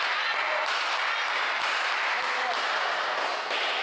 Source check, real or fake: real